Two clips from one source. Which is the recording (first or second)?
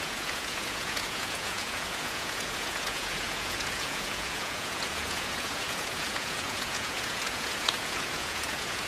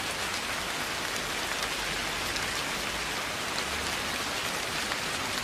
second